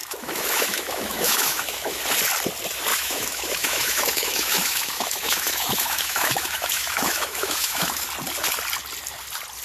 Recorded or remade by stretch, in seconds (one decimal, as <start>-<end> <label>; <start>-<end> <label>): 0.0-2.0 remade; 2.0-2.9 recorded; 2.9-8.1 remade; 8.1-9.6 recorded